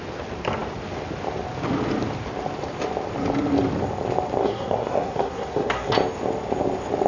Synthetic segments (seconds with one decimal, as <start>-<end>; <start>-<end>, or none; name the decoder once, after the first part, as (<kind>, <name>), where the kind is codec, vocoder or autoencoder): 4.4-5.9 (codec, SNAC)